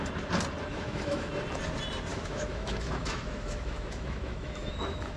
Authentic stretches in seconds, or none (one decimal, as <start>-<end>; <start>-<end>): 0.0-0.7; 1.3-2.1